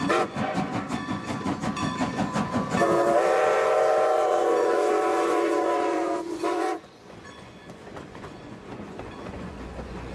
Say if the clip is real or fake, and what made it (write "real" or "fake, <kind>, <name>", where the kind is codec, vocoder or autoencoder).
fake, vocoder, Vocos